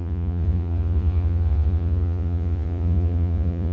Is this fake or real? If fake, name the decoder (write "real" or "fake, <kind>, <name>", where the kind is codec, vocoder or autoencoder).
fake, vocoder, Vocos